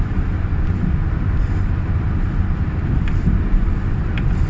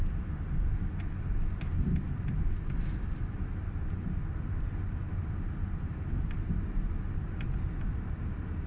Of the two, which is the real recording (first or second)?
second